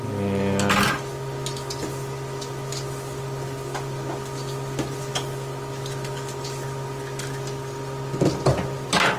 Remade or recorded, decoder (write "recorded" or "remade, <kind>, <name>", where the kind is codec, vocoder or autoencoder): recorded